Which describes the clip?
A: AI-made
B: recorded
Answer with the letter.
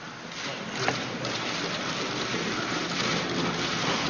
B